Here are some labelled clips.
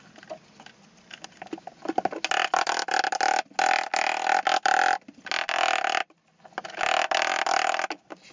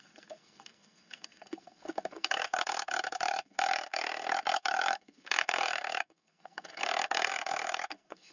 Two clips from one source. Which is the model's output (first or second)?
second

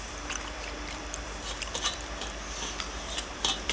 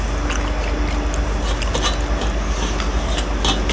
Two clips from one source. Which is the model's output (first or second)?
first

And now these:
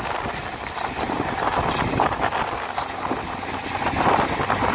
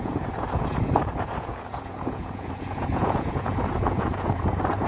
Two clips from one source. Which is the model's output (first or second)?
second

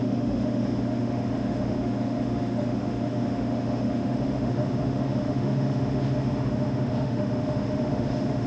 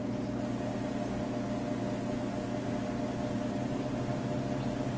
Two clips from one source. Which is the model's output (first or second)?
first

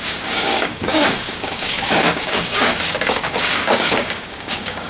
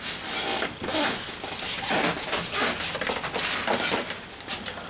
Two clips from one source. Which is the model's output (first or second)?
first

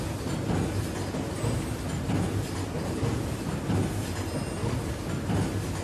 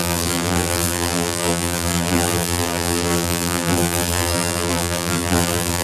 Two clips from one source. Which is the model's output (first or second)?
second